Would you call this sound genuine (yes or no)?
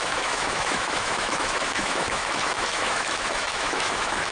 no